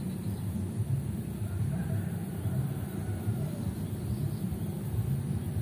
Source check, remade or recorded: recorded